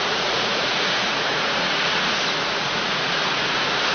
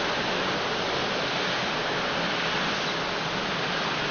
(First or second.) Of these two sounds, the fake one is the first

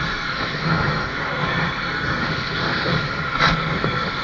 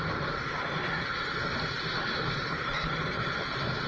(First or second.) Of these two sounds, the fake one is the first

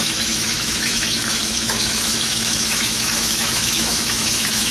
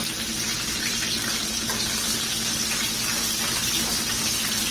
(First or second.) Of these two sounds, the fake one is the first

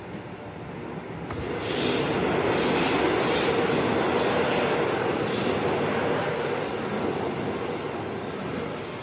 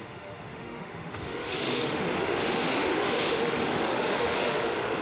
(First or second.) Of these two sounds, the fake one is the second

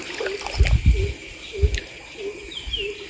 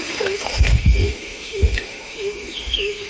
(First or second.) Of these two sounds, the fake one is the second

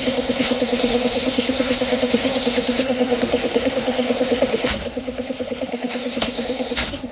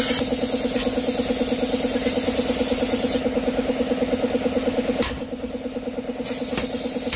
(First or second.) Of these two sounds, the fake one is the first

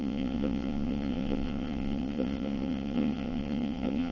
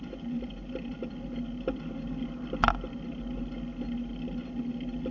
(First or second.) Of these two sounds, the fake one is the first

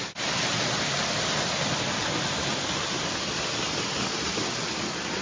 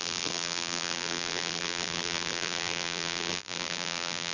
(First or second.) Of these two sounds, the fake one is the second